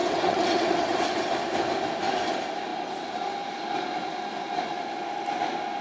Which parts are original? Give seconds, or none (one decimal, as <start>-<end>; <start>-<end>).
1.3-5.8